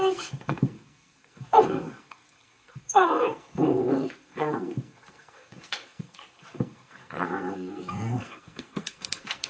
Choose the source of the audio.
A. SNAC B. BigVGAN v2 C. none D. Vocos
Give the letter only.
A